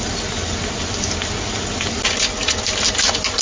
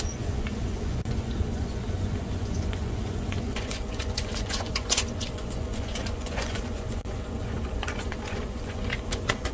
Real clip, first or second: first